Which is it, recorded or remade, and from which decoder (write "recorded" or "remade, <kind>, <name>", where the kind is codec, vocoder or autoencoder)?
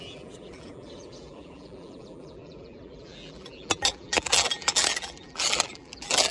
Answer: remade, vocoder, BigVGAN v2